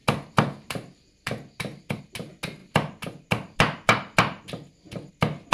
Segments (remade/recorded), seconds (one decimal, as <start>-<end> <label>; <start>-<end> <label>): 0.0-2.0 remade; 2.0-5.5 recorded